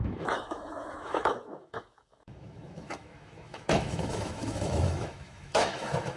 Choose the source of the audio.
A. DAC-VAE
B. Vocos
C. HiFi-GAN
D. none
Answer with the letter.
A